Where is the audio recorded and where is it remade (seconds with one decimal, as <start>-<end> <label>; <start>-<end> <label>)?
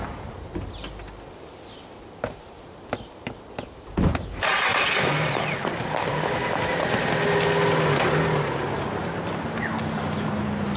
0.0-10.8 recorded